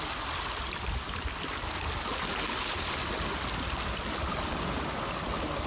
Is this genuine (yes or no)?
yes